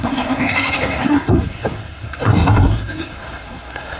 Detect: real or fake fake